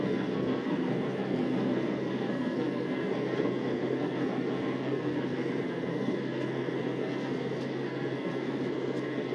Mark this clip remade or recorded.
remade